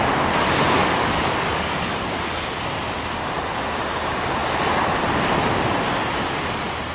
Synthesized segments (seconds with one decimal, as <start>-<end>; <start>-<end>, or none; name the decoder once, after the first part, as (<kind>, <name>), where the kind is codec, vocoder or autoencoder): 0.8-2.5 (codec, DAC)